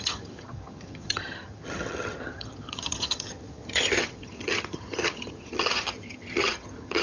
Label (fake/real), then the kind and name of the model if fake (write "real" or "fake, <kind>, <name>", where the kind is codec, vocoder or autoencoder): fake, vocoder, HiFi-GAN